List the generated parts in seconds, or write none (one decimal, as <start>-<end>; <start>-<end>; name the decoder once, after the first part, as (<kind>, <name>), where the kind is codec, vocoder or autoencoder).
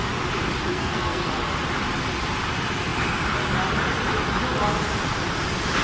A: 0.7-1.3 (codec, SNAC)